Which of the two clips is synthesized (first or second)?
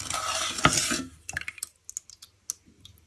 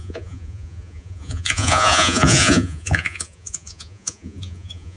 second